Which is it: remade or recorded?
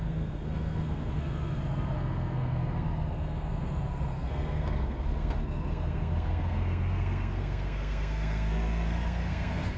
remade